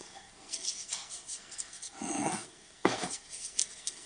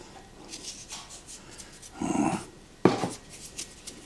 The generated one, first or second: first